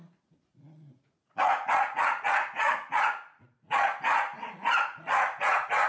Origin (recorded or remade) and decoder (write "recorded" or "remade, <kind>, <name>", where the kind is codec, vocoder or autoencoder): remade, vocoder, Vocos